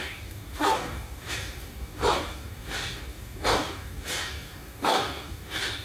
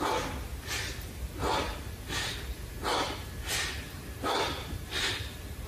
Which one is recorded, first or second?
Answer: second